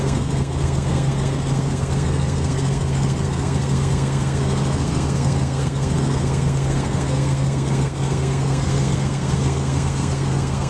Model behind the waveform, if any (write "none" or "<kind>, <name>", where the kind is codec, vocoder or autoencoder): codec, SNAC